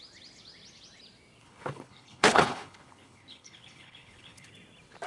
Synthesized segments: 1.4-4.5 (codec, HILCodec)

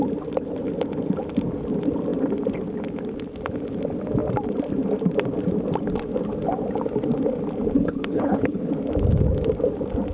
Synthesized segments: 7.8-8.7 (codec, HILCodec)